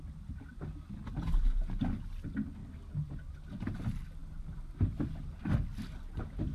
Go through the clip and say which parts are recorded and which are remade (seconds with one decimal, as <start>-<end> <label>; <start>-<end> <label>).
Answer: 0.0-6.5 recorded